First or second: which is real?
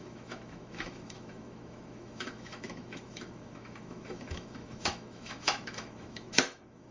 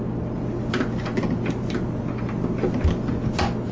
second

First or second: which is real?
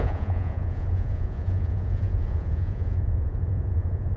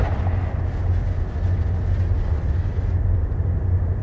second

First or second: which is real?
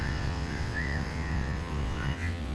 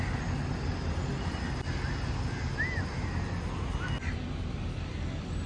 second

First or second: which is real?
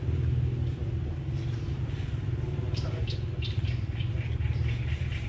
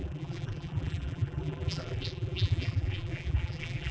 first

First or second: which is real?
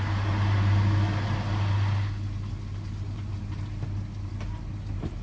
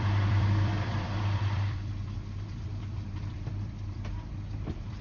first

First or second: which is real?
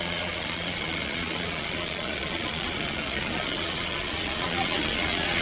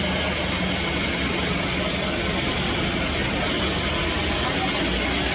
second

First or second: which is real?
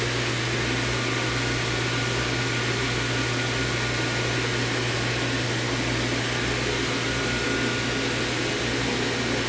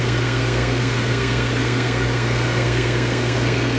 first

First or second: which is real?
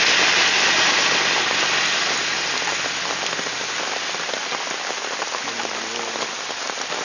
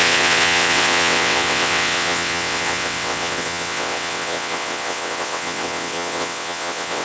first